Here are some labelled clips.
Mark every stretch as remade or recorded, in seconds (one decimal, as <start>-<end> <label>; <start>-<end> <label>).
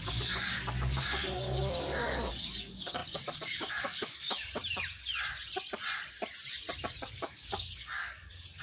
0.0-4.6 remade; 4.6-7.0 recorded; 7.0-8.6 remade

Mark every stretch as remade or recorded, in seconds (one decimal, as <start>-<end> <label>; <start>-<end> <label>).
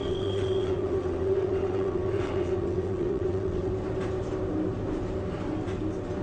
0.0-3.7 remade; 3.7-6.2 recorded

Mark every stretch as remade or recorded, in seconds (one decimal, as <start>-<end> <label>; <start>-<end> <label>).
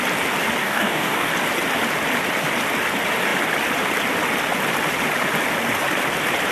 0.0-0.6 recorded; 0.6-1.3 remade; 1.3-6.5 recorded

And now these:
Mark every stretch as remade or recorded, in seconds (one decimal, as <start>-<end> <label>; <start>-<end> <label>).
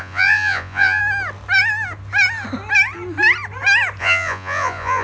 0.0-1.0 remade; 1.0-4.0 recorded; 4.0-5.0 remade